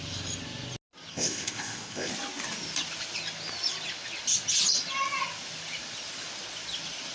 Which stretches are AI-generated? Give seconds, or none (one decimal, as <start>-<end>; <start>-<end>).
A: 1.1-2.1